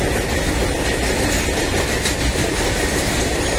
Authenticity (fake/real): real